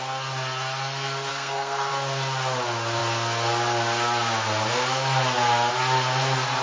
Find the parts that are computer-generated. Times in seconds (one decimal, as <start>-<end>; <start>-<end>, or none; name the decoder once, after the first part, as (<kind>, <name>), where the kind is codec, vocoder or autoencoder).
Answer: 1.3-1.9 (codec, SNAC)